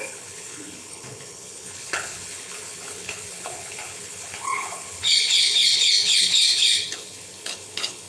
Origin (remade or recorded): remade